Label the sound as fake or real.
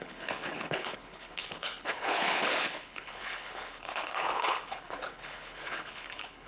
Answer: fake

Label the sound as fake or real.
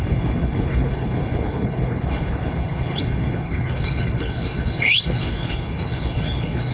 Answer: fake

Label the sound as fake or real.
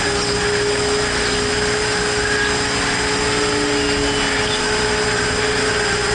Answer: real